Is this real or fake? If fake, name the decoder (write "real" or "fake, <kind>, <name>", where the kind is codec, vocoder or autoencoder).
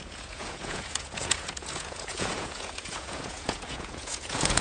fake, vocoder, Vocos